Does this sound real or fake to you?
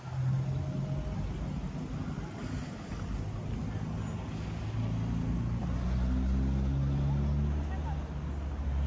real